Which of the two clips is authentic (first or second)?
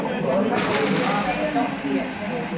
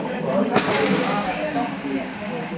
first